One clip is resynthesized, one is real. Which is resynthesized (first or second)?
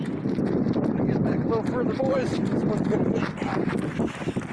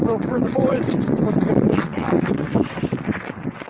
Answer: second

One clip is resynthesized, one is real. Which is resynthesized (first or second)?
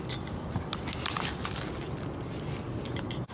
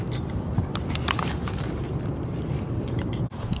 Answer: second